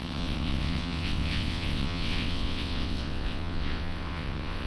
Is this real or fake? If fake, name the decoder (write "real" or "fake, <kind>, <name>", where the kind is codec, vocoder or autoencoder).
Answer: fake, vocoder, WaveNeXt